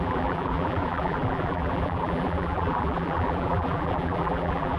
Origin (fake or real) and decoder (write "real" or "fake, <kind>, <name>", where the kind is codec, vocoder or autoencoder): fake, vocoder, BigVGAN v2